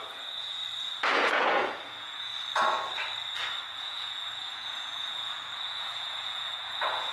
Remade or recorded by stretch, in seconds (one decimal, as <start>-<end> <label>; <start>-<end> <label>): 0.0-0.6 remade; 0.6-1.1 recorded; 1.1-2.3 remade; 2.3-3.8 recorded; 3.8-7.1 remade